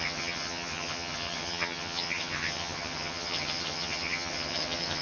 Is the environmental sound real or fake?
fake